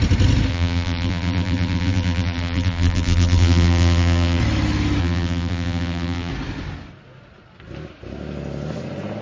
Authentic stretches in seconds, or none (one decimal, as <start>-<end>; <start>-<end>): 0.0-0.5; 4.4-5.0; 6.3-9.2